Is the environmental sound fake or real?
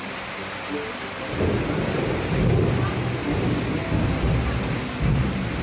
real